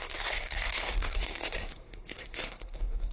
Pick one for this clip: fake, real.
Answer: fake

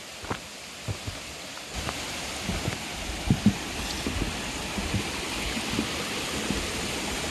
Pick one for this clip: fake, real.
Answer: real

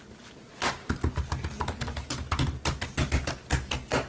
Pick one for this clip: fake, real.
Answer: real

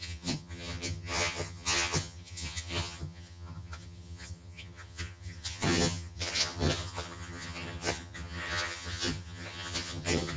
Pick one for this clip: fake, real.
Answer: fake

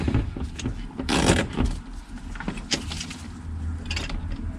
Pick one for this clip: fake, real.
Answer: real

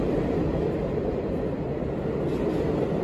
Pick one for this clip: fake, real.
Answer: real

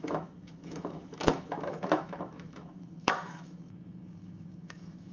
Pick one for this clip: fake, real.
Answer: fake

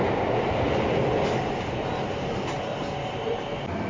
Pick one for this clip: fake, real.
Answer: real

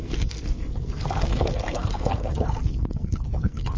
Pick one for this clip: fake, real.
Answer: fake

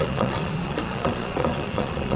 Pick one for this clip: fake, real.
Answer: fake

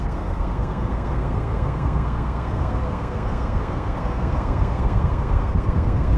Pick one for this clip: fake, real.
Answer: fake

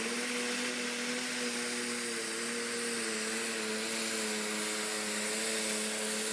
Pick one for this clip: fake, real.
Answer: real